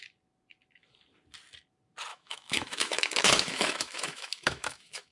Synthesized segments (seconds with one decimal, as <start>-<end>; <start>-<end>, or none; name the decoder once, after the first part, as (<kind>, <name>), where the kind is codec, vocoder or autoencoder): 2.1-5.1 (autoencoder, DAC-VAE)

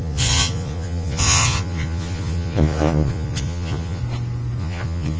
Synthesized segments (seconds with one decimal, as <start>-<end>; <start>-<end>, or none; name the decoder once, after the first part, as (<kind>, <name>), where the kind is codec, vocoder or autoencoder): 0.0-4.0 (vocoder, Vocos); 4.6-5.2

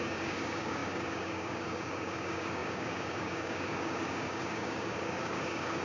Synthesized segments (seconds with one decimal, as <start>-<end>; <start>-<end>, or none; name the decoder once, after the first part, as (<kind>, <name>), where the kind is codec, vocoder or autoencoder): 0.0-5.8 (codec, DAC)